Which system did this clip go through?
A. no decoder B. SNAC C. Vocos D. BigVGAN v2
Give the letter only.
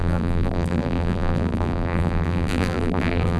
D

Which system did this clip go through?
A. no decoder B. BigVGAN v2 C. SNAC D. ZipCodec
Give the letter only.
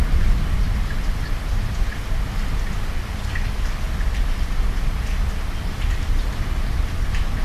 A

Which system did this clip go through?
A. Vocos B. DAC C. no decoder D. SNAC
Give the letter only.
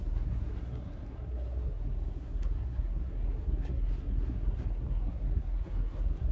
D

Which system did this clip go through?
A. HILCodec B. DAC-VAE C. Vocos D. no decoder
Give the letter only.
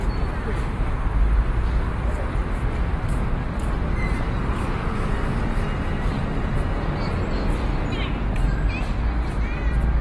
D